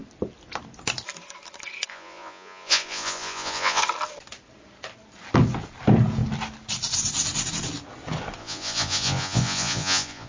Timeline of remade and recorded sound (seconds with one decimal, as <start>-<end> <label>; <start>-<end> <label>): 0.0-1.9 recorded; 1.9-3.8 remade; 3.8-8.4 recorded; 8.4-10.3 remade